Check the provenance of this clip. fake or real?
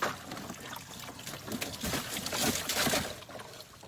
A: real